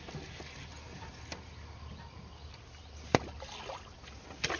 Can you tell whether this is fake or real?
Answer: real